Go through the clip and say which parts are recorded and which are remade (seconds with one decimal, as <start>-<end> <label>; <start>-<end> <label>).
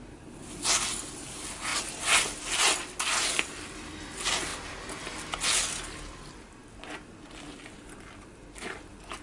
0.0-9.2 recorded